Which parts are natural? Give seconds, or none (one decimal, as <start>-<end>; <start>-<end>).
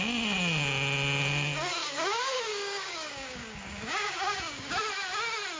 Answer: 0.0-1.8; 4.8-5.6